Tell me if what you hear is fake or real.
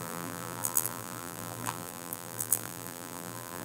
fake